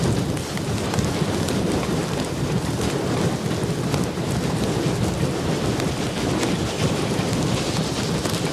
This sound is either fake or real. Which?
real